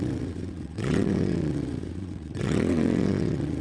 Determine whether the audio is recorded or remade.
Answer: remade